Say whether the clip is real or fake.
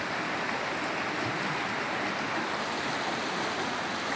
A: real